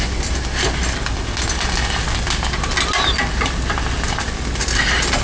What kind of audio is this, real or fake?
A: real